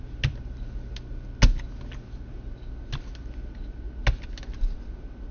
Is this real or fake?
real